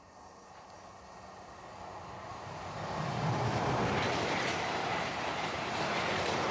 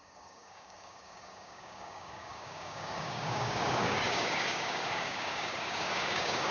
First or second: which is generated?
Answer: second